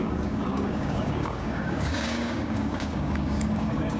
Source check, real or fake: fake